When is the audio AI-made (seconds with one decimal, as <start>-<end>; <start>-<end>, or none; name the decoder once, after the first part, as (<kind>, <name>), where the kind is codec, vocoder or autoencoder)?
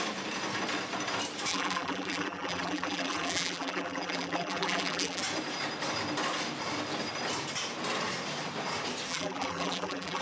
1.5-5.2 (vocoder, BigVGAN v2); 9.1-10.2